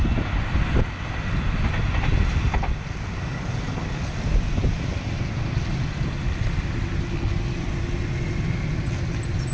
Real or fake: real